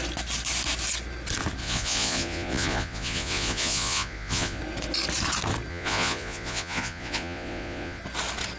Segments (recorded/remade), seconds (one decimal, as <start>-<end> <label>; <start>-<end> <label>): 0.0-1.6 recorded; 1.6-4.6 remade; 4.6-5.7 recorded; 5.7-8.0 remade; 8.0-8.6 recorded